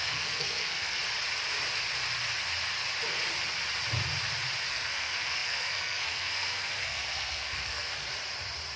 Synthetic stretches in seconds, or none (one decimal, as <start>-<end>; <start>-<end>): 0.0-1.0; 4.7-8.1